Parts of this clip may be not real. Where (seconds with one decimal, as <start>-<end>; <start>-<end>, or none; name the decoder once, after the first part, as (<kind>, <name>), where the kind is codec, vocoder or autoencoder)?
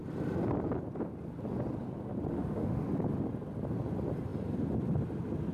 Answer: 2.3-2.9 (autoencoder, DAC-VAE)